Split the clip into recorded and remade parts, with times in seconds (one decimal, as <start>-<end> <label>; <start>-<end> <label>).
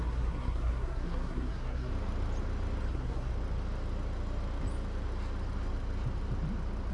0.0-1.9 remade; 1.9-2.9 recorded; 2.9-3.3 remade; 3.3-6.9 recorded